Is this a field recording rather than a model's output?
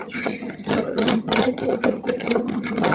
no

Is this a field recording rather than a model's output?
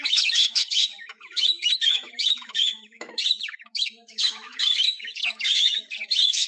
no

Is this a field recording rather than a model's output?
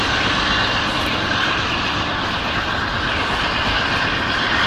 yes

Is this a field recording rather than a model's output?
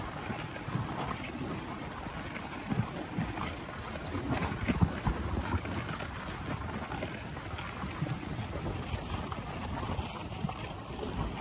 yes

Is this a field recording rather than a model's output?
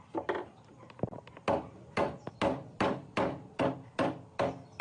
yes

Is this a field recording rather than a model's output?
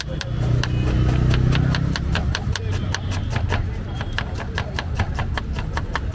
yes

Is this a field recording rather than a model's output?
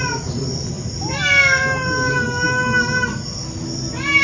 yes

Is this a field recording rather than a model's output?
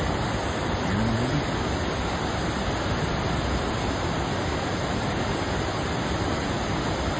yes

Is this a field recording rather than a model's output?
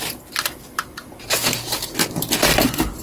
yes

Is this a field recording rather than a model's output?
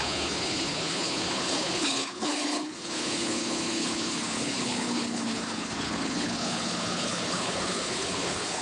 no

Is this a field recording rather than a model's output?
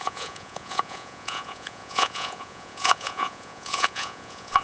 no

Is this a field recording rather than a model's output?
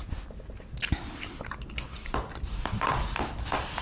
yes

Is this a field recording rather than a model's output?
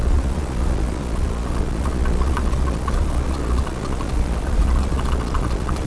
no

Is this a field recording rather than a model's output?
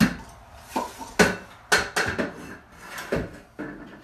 yes